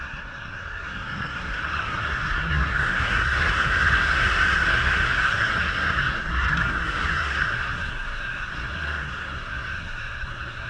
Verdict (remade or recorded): remade